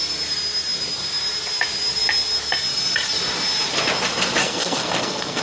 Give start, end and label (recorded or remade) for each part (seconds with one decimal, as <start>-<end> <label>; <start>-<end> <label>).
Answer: 0.0-4.4 recorded; 4.4-5.4 remade